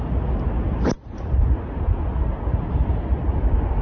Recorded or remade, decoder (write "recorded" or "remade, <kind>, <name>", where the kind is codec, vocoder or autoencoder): recorded